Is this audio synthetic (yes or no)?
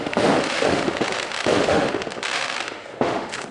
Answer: yes